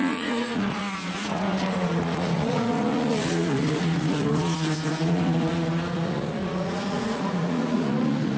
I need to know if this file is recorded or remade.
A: remade